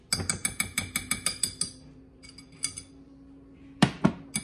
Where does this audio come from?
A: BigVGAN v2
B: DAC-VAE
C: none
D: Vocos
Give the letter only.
C